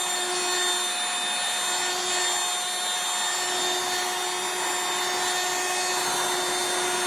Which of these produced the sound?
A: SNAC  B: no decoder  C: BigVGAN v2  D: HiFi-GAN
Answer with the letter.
B